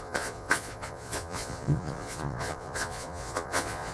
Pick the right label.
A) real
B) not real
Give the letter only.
B